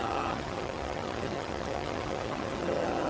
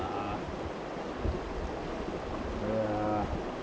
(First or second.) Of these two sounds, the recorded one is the second